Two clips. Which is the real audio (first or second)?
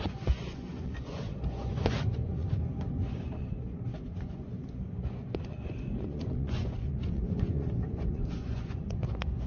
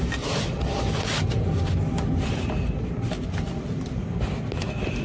second